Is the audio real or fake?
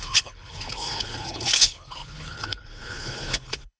fake